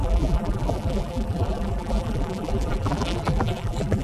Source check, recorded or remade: remade